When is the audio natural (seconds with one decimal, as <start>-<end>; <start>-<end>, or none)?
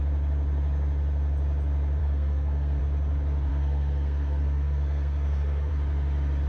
0.0-2.0; 2.8-3.5; 5.7-6.5